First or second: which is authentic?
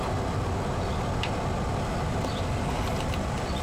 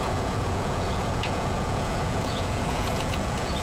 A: first